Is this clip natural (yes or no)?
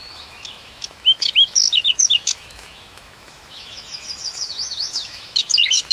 no